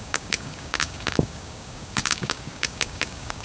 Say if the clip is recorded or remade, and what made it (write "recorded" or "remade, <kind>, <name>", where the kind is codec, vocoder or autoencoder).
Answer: remade, codec, DAC